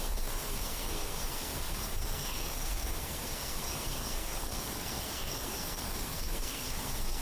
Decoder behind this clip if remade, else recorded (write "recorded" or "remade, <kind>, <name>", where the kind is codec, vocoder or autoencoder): remade, codec, SNAC